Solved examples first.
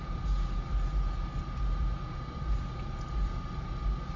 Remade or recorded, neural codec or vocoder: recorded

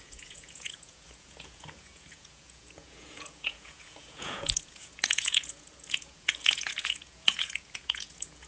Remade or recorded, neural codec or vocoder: remade, vocoder, Vocos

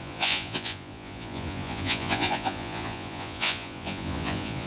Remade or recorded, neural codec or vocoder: remade, vocoder, Vocos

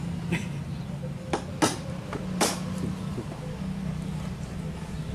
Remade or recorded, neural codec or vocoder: recorded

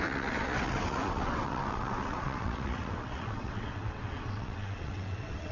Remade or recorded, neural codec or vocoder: remade, vocoder, WaveNeXt